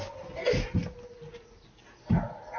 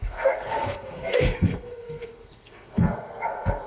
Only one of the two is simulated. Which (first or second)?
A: second